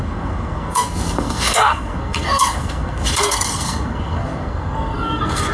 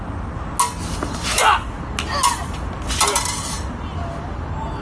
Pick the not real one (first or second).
first